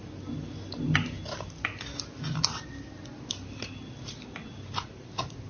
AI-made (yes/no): no